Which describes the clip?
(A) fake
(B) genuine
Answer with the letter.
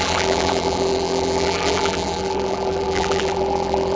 A